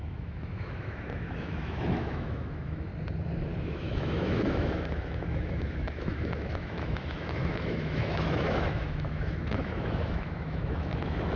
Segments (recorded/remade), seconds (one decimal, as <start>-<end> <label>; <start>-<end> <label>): 0.0-2.9 remade; 2.9-3.6 recorded; 3.6-11.4 remade